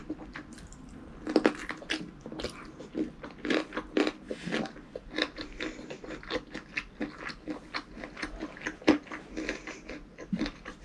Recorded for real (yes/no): yes